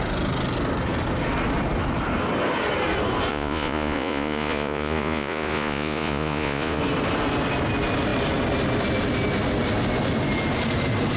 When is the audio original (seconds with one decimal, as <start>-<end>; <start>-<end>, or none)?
0.0-3.3; 6.8-11.2